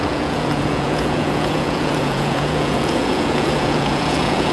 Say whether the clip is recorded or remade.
remade